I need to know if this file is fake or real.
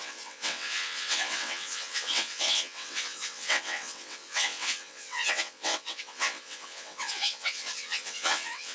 fake